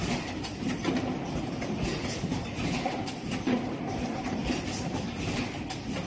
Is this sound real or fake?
real